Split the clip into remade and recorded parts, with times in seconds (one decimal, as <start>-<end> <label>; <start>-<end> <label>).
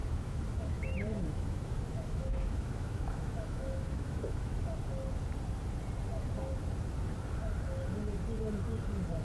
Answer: 0.0-4.6 remade; 4.6-9.2 recorded